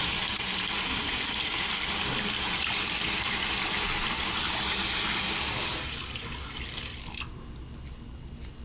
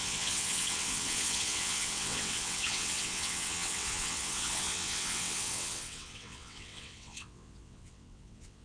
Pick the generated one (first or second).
second